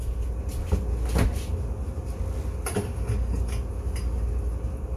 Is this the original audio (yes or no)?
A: yes